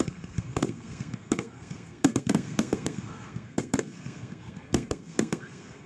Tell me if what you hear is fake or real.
fake